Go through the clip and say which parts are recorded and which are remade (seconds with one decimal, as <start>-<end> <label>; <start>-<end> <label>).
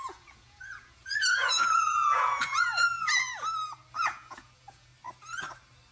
0.0-3.2 remade; 3.2-3.9 recorded; 3.9-4.9 remade; 4.9-5.9 recorded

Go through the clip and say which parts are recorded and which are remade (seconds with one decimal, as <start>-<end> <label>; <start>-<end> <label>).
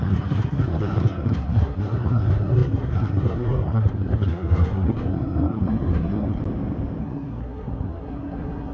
0.0-6.4 remade; 6.4-7.0 recorded; 7.0-8.7 remade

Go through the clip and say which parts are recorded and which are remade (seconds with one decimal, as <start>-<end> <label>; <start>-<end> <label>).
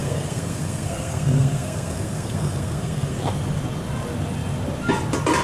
0.0-3.2 remade; 3.2-5.4 recorded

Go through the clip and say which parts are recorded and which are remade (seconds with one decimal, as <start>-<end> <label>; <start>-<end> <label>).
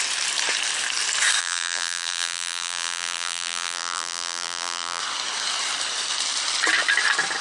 0.0-1.4 recorded; 1.4-5.0 remade; 5.0-7.4 recorded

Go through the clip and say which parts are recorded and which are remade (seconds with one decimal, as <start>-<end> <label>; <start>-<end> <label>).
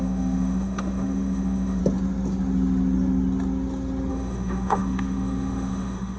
0.0-1.8 remade; 1.8-4.1 recorded; 4.1-6.2 remade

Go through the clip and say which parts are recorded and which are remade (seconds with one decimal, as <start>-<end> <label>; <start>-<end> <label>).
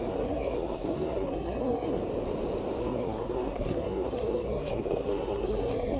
0.0-2.0 remade; 2.0-2.8 recorded; 2.8-6.0 remade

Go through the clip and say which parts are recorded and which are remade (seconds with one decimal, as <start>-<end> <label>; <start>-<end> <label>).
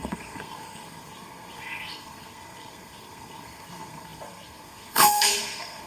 0.0-5.9 remade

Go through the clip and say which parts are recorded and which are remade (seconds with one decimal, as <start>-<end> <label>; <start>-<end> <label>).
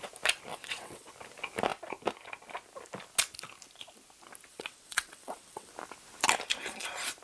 0.0-0.5 recorded; 0.5-1.1 remade; 1.1-4.5 recorded; 4.5-5.7 remade; 5.7-7.2 recorded